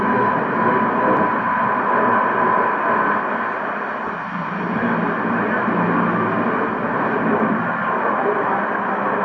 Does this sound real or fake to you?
real